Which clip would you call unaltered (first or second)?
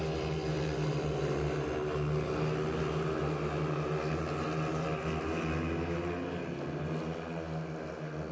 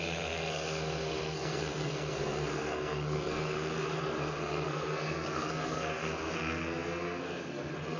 first